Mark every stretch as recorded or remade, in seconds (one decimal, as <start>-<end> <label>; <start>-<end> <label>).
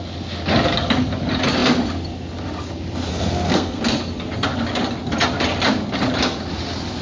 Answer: 0.0-3.1 recorded; 3.1-3.8 remade; 3.8-7.0 recorded